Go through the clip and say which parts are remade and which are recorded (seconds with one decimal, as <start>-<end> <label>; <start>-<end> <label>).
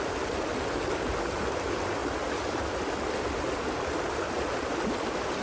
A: 0.0-5.4 recorded